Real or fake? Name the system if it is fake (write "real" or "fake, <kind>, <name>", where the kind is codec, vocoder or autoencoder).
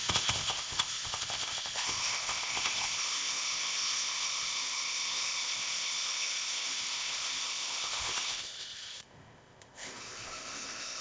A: fake, codec, ZipCodec